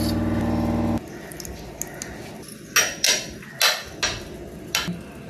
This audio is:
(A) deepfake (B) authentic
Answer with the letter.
B